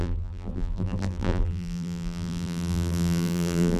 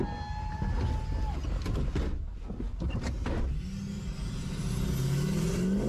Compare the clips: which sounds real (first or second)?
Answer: second